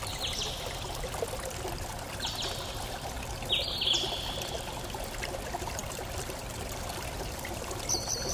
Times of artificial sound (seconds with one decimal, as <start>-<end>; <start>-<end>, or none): 5.0-8.3

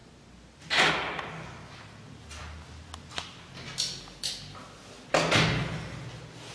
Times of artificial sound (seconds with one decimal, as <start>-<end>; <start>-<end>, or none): none